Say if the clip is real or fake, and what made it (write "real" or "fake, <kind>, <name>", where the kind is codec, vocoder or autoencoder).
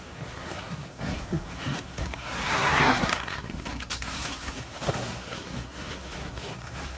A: fake, codec, SNAC